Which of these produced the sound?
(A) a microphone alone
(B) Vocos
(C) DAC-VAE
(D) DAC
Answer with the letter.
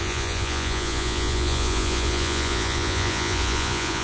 B